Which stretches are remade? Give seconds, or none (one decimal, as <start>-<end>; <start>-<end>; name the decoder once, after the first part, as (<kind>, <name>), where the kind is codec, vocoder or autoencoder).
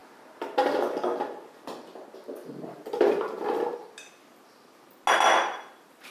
none